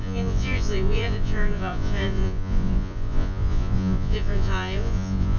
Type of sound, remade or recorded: remade